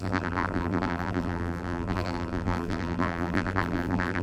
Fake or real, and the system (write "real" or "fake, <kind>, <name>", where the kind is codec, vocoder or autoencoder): fake, vocoder, BigVGAN v2